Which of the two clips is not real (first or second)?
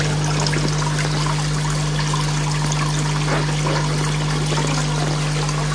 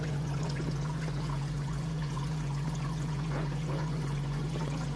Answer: second